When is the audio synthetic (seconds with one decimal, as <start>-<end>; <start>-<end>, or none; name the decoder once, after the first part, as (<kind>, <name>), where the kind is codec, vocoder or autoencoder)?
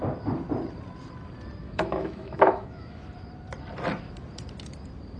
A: 1.6-3.0 (autoencoder, DAC-VAE)